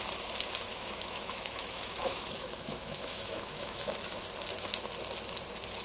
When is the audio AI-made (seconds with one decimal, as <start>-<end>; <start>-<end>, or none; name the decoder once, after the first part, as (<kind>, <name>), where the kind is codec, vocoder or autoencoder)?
0.7-4.2 (autoencoder, DAC-VAE)